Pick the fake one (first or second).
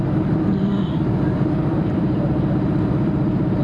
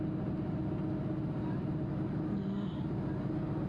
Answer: first